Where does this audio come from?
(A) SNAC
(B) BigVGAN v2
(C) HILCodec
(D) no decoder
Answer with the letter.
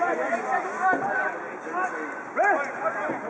D